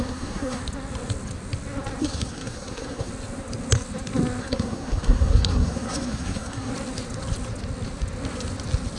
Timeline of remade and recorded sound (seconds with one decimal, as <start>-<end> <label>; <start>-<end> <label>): 0.0-0.6 remade; 0.6-2.0 recorded; 2.0-3.1 remade; 3.1-4.4 recorded; 4.4-6.7 remade; 6.7-9.0 recorded